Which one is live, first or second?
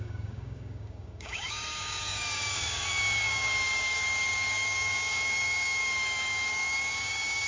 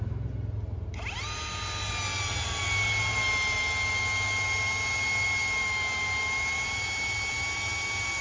second